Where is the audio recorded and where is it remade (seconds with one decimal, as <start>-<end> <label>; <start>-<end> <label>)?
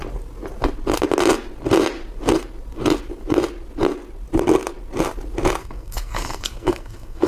0.0-5.6 recorded; 5.6-7.3 remade